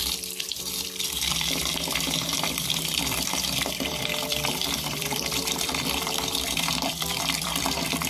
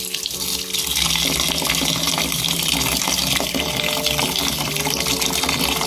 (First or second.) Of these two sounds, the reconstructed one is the first